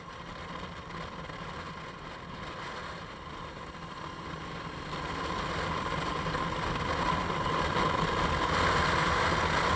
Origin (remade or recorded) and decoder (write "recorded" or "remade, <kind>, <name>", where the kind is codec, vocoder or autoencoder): recorded